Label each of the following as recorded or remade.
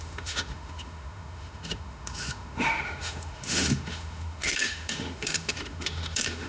remade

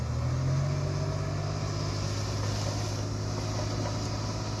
recorded